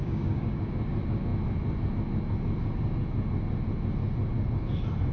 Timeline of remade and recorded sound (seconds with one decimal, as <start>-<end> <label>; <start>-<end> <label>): 0.0-0.6 remade; 0.6-5.1 recorded